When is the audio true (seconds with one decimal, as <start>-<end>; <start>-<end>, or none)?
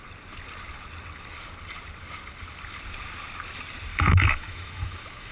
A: 0.0-3.9